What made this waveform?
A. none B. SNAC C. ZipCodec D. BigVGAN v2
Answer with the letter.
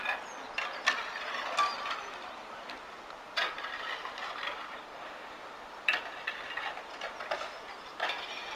A